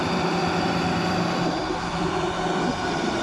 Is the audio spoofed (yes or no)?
yes